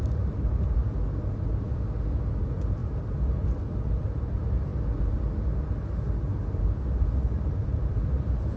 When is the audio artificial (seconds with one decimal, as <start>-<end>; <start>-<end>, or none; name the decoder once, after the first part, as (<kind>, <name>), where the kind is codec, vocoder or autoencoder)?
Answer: 0.0-0.8 (vocoder, BigVGAN v2); 2.4-2.8; 3.9-4.7; 7.0-8.6